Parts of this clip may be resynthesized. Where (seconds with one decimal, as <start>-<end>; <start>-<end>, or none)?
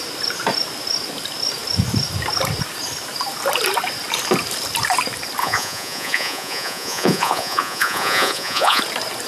5.4-8.8